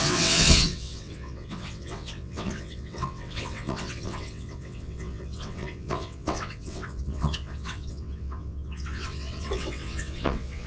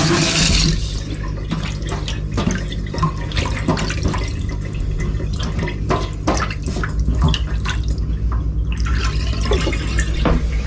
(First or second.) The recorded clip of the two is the second